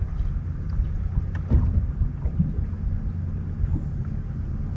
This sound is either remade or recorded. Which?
recorded